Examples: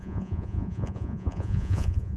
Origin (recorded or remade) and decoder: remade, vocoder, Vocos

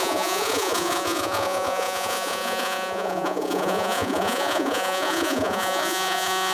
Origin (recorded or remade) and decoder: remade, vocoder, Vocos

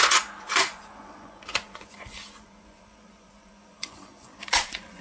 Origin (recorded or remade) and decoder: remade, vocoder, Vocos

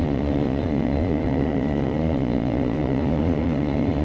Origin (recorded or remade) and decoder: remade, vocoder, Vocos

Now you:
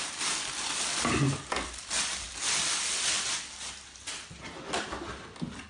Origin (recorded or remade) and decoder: recorded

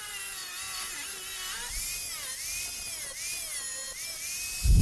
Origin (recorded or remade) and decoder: recorded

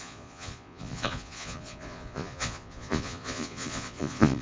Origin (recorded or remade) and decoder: remade, vocoder, Vocos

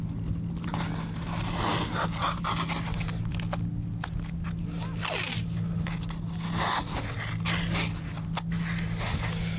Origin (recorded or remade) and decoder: recorded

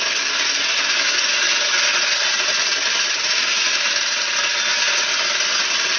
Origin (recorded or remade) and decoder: recorded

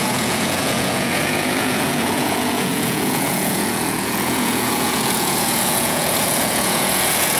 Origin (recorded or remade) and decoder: remade, vocoder, Vocos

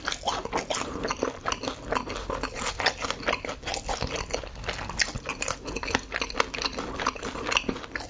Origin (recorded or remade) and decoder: recorded